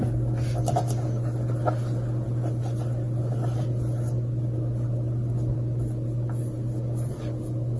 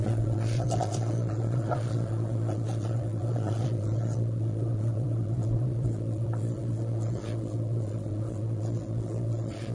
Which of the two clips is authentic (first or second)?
first